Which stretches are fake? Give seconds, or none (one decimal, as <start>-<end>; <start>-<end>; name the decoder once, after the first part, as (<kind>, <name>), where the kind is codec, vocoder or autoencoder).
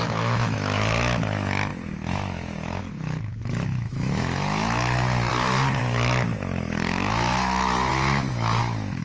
0.0-5.3 (autoencoder, DAC-VAE); 5.8-9.0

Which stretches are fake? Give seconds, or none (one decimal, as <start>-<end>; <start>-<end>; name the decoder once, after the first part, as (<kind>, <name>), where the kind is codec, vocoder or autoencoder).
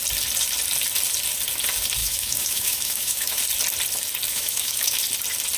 2.0-3.4 (autoencoder, DAC-VAE); 4.3-5.0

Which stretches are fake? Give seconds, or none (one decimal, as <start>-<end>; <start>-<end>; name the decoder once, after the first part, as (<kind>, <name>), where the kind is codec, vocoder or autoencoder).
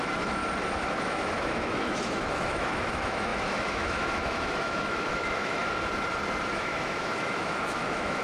0.0-0.4 (autoencoder, DAC-VAE); 1.0-5.6; 6.5-8.2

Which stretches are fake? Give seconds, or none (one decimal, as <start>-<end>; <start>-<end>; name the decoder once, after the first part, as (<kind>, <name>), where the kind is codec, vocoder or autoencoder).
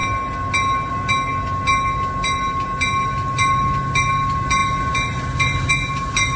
none